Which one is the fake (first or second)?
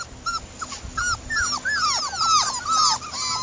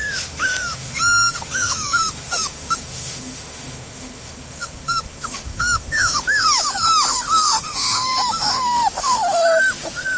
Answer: second